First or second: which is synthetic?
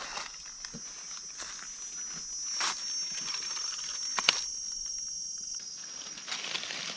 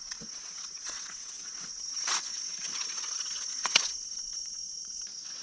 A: second